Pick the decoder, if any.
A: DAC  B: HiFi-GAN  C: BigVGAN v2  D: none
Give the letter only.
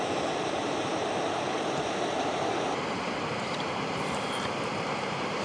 C